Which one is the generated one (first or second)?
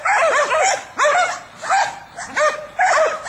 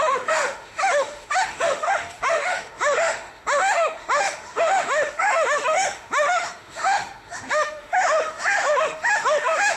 second